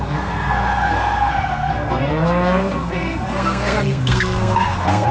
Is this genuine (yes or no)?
no